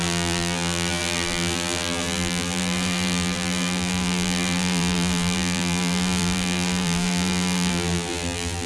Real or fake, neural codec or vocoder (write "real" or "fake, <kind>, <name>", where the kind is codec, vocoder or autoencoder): fake, vocoder, BigVGAN v2